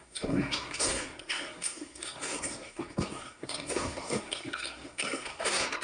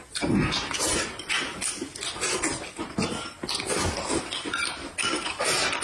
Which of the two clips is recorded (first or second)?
second